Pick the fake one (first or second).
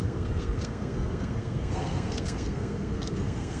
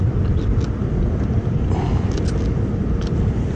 first